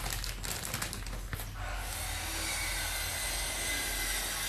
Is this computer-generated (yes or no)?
no